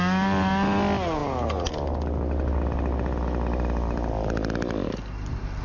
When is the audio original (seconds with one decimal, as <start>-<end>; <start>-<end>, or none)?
0.0-5.6